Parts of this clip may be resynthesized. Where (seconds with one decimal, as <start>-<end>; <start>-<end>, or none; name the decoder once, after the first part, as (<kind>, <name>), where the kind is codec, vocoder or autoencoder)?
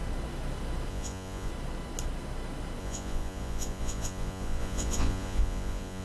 0.9-1.5 (vocoder, Vocos); 2.8-6.0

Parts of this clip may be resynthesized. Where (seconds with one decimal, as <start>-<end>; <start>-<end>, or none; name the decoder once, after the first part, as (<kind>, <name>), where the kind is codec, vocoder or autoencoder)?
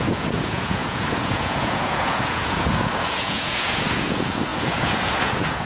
0.0-5.7 (vocoder, Vocos)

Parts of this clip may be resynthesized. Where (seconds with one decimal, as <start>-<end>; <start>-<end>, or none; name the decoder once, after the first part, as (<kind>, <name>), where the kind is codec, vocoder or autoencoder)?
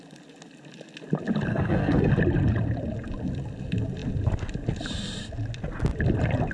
1.5-2.1 (codec, SNAC)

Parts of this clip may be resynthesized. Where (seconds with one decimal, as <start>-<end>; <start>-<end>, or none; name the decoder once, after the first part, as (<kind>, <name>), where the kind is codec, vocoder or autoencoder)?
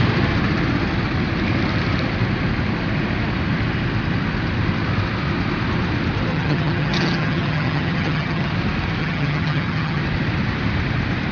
6.3-8.5 (vocoder, HiFi-GAN); 9.0-10.0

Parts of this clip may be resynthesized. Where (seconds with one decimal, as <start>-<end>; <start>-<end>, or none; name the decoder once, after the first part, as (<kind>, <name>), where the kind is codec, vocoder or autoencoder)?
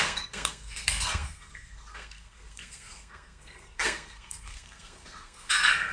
0.0-5.9 (codec, SNAC)